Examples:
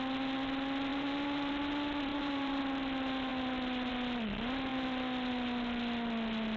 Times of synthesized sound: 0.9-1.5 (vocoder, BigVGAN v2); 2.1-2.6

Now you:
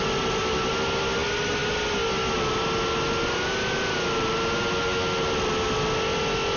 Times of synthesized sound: none

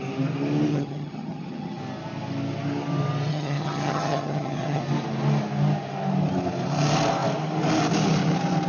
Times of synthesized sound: 0.7-1.8 (vocoder, HiFi-GAN); 3.3-4.8

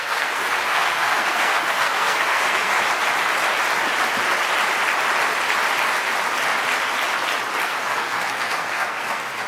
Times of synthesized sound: 0.0-2.7 (codec, SNAC); 7.6-9.5

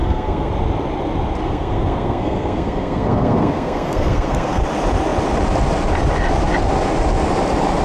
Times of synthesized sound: 0.0-0.5 (codec, SNAC); 1.4-4.6

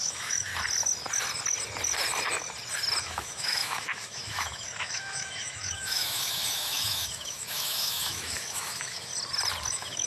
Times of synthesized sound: 0.0-0.5 (autoencoder, DAC-VAE); 3.0-9.1; 9.7-10.1

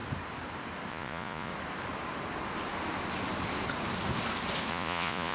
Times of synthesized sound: 0.9-1.5 (vocoder, Vocos); 4.7-5.3